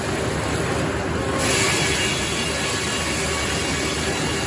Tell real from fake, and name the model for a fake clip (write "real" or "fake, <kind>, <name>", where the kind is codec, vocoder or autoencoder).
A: real